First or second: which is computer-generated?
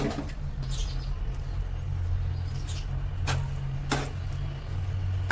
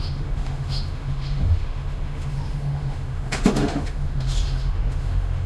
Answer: second